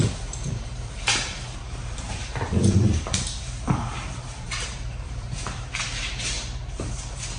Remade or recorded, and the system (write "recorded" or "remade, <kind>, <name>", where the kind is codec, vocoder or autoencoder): remade, vocoder, BigVGAN v2